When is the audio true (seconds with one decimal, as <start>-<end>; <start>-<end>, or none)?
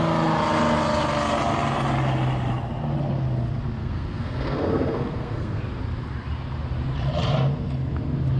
0.0-3.8; 5.6-8.4